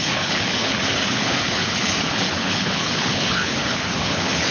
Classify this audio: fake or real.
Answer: fake